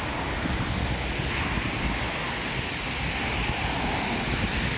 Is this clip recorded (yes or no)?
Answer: yes